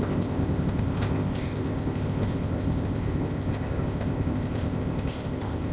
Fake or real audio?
fake